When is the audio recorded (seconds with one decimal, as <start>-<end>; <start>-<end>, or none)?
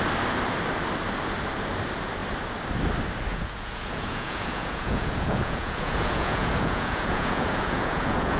0.0-3.3